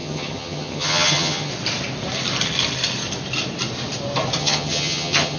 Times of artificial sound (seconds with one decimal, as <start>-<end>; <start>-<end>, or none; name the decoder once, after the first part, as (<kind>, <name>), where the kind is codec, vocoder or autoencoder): 0.0-1.5 (vocoder, HiFi-GAN); 4.4-5.4